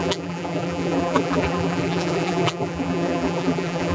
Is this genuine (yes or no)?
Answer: no